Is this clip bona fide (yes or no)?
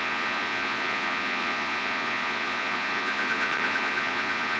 no